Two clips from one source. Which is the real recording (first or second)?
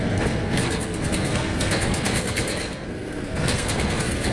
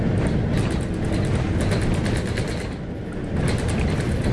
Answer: second